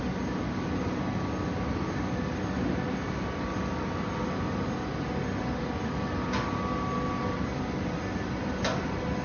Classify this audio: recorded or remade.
recorded